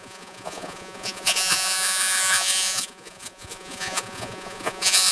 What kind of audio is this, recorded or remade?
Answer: remade